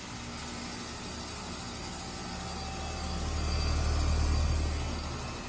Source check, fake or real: real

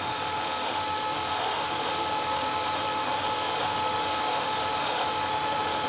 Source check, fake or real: fake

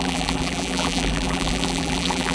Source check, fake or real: fake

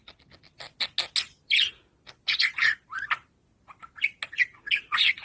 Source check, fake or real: real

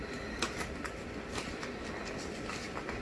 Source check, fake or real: real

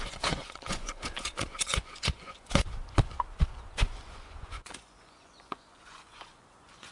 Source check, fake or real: fake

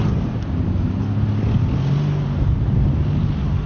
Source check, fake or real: real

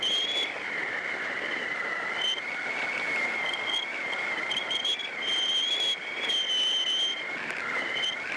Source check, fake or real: real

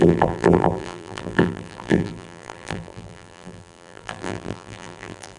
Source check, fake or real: fake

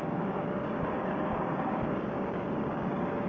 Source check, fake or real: fake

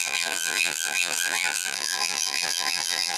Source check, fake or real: fake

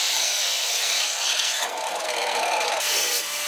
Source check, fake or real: fake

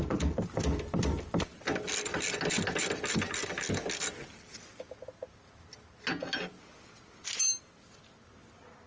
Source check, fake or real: real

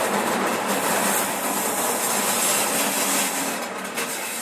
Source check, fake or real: real